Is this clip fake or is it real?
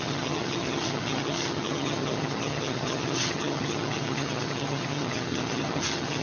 fake